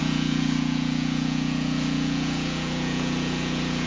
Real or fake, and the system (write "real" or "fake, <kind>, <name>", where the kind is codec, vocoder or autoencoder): fake, vocoder, Vocos